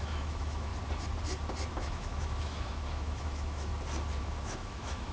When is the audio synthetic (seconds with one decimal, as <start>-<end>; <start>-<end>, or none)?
0.0-0.7; 1.7-3.7; 4.2-5.1